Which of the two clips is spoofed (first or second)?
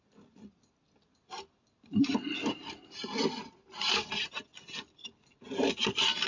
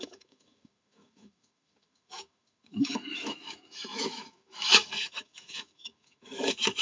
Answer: second